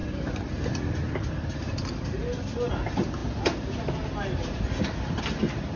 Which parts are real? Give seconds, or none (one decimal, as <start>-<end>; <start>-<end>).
0.0-5.8